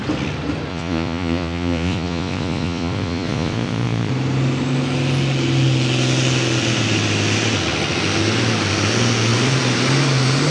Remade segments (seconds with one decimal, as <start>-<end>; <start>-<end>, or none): 0.7-4.1